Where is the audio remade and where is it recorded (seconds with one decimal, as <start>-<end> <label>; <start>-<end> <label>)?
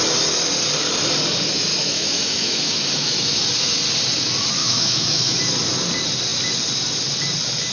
0.0-1.7 recorded; 1.7-3.4 remade; 3.4-4.6 recorded; 4.6-5.4 remade; 5.4-7.7 recorded